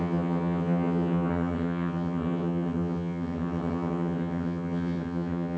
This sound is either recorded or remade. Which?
remade